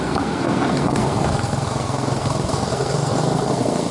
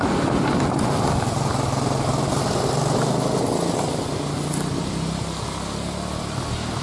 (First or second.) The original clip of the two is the second